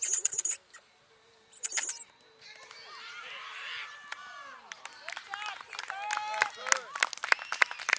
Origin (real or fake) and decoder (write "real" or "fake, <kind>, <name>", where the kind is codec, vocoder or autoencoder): real